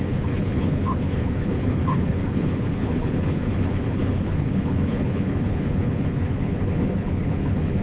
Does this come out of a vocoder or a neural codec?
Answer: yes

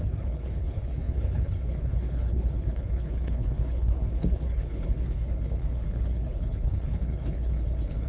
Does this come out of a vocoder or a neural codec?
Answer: yes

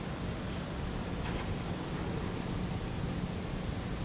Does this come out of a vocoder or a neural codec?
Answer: no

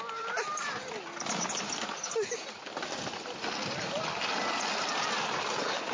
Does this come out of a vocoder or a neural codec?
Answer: no